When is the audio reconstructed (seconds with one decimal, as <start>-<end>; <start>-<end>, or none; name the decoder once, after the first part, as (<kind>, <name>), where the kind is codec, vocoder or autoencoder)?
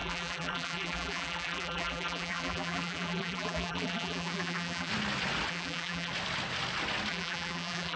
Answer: 0.0-4.9 (vocoder, BigVGAN v2); 5.5-6.1; 7.1-8.0